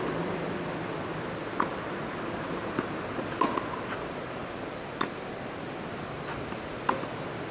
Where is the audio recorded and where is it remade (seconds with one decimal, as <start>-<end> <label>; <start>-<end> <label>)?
0.0-7.5 recorded